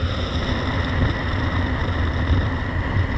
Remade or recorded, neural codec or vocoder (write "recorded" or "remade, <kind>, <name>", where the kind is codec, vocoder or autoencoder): recorded